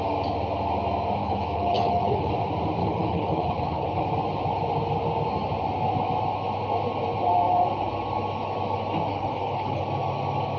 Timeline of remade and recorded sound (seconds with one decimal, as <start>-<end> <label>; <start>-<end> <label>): 0.0-1.2 recorded; 1.2-2.3 remade; 2.3-2.8 recorded; 2.8-4.0 remade; 4.0-9.1 recorded; 9.1-9.8 remade; 9.8-10.6 recorded